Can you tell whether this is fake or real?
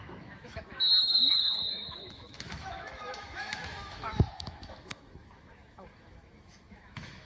fake